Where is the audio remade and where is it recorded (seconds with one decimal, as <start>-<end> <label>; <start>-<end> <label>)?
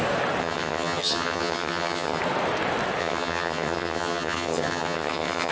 0.0-0.4 recorded; 0.4-2.2 remade; 2.2-3.0 recorded; 3.0-5.5 remade